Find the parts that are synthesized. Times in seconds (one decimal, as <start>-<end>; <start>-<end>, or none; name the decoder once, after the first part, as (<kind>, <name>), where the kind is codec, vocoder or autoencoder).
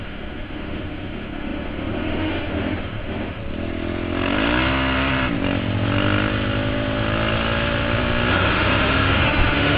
0.0-3.4 (autoencoder, DAC-VAE); 8.3-9.8